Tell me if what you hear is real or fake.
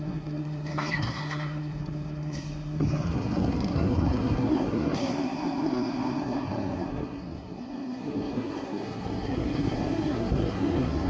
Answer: fake